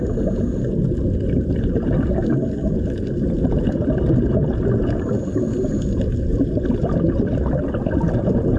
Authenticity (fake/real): real